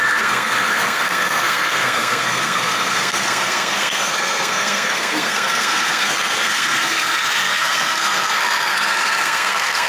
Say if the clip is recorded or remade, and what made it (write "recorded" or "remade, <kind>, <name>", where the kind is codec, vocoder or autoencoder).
remade, codec, SNAC